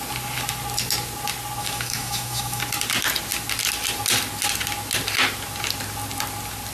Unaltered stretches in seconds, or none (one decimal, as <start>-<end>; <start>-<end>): 0.0-1.6; 2.6-6.7